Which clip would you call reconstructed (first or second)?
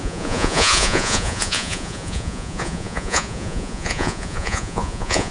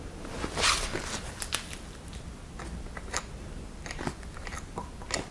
first